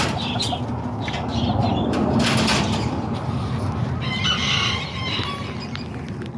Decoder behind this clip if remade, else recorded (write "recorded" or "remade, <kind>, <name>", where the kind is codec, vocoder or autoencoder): recorded